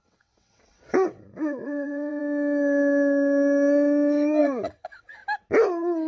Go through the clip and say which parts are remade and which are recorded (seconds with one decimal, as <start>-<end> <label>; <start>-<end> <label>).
0.0-2.2 remade; 2.2-4.4 recorded; 4.4-5.2 remade; 5.2-6.1 recorded